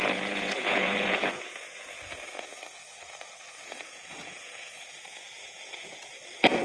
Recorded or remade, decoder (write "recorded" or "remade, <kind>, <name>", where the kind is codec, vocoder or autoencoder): remade, vocoder, Vocos